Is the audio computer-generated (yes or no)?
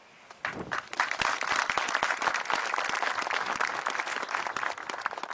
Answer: no